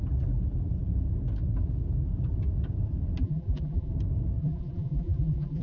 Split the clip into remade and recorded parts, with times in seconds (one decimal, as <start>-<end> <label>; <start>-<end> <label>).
0.0-3.2 recorded; 3.2-3.9 remade; 3.9-4.4 recorded; 4.4-5.6 remade